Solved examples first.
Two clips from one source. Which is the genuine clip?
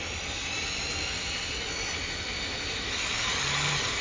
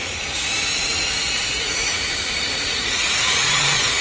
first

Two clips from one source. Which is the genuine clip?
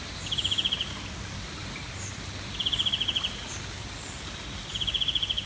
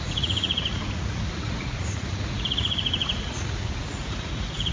first